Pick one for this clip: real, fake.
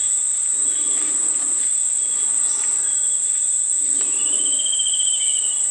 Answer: real